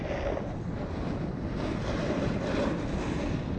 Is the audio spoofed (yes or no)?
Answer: no